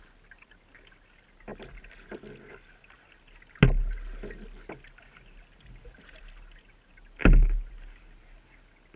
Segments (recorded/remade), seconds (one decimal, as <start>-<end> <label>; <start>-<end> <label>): 0.0-9.0 recorded

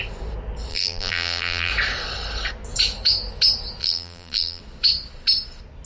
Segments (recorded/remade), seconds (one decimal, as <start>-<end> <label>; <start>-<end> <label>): 0.0-0.7 recorded; 0.7-1.7 remade; 1.7-3.8 recorded; 3.8-4.6 remade; 4.6-5.9 recorded

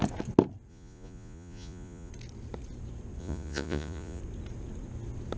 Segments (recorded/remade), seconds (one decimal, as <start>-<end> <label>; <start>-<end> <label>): 0.0-0.7 recorded; 0.7-2.1 remade; 2.1-3.2 recorded; 3.2-4.2 remade; 4.2-5.4 recorded

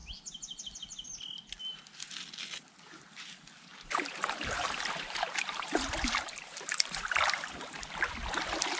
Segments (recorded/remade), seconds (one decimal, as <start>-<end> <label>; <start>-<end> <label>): 0.0-3.7 recorded; 3.7-7.4 remade; 7.4-8.8 recorded

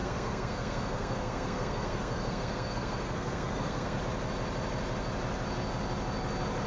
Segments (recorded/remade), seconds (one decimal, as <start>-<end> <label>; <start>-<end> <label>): 0.0-4.0 remade; 4.0-6.7 recorded

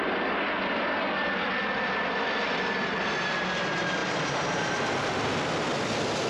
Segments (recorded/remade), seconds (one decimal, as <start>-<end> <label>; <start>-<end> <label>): 0.0-4.0 recorded; 4.0-4.9 remade; 4.9-6.3 recorded